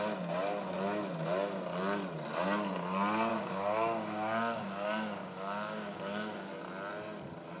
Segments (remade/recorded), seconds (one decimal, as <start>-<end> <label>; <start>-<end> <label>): 0.0-3.3 recorded; 3.3-6.5 remade; 6.5-7.6 recorded